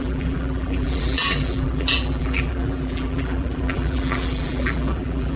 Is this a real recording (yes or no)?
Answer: no